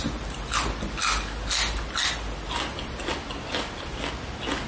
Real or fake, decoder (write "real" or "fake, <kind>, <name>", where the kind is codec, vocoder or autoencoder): real